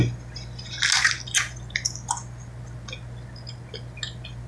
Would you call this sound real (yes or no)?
yes